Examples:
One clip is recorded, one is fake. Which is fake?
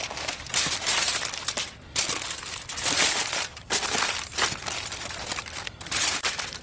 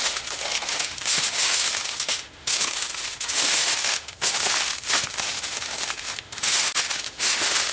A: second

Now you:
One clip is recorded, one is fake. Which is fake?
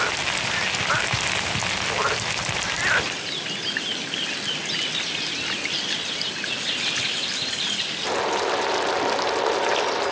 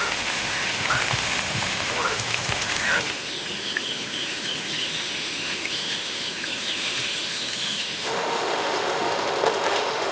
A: second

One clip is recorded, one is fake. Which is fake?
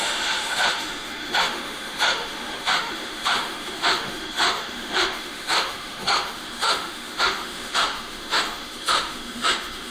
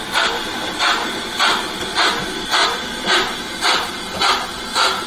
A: first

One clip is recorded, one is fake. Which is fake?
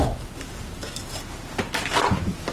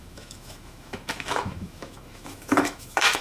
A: second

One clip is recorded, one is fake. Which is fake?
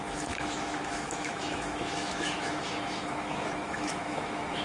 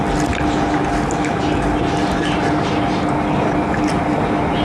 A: first